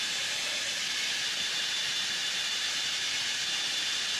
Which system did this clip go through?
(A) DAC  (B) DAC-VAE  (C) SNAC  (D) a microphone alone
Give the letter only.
D